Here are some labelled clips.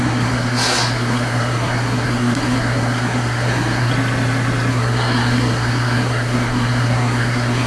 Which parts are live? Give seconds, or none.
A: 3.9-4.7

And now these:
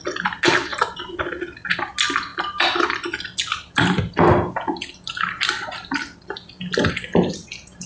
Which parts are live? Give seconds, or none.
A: 0.0-0.7; 1.2-7.9

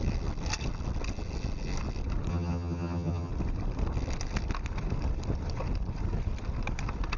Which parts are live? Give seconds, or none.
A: 0.0-2.3; 3.3-7.2

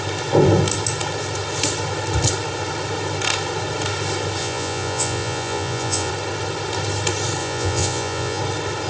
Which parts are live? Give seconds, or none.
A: 0.0-4.4; 6.1-7.4; 8.4-8.9

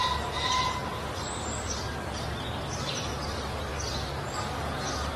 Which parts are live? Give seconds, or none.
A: 0.0-5.2